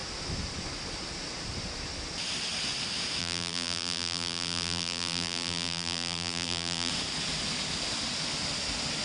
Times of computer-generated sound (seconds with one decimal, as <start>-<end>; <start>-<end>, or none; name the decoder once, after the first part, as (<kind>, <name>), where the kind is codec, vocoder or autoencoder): 3.2-6.9 (vocoder, BigVGAN v2)